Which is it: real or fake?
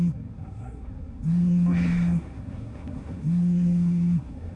fake